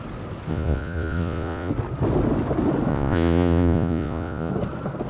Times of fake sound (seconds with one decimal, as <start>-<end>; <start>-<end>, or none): 0.5-1.7; 2.9-4.5